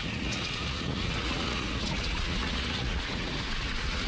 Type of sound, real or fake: fake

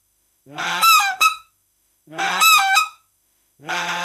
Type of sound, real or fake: fake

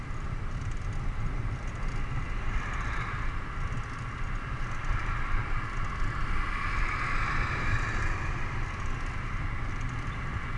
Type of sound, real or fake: real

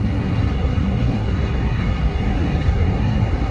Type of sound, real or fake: fake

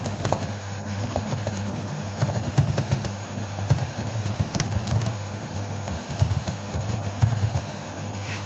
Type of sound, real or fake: fake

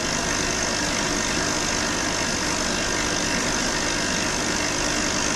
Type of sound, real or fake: real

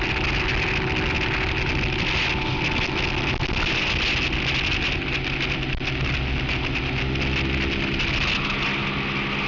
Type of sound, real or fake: real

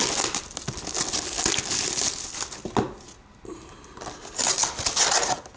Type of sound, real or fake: real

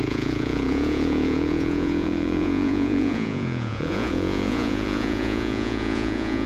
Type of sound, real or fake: fake